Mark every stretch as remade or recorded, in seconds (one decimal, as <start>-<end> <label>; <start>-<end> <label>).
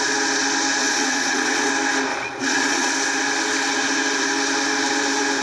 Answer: 0.0-0.8 recorded; 0.8-1.7 remade; 1.7-2.1 recorded; 2.1-2.9 remade; 2.9-5.4 recorded